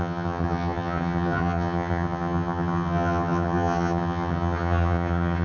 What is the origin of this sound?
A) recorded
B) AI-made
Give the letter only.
B